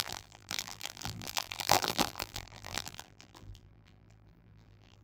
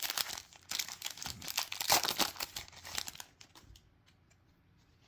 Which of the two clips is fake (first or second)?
first